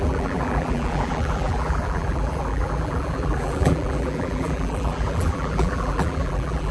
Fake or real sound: fake